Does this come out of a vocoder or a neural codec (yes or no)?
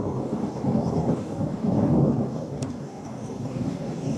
yes